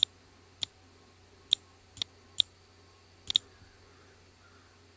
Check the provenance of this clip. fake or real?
real